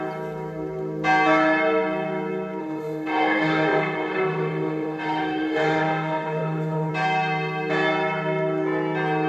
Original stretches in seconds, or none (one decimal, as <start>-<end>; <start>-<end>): 0.0-2.6; 6.9-9.3